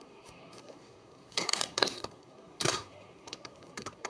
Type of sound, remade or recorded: remade